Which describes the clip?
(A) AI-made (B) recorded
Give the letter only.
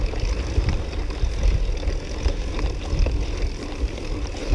B